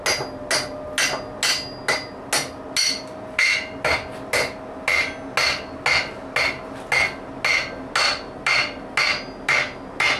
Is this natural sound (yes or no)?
yes